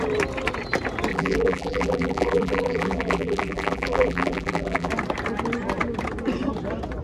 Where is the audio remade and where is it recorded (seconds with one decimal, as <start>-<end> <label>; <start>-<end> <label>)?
0.0-1.1 recorded; 1.1-4.9 remade; 4.9-7.0 recorded